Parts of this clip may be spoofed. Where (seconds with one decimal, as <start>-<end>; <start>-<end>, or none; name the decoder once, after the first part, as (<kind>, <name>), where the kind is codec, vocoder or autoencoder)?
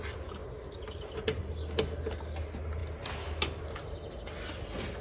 none